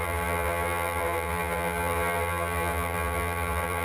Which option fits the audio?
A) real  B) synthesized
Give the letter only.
B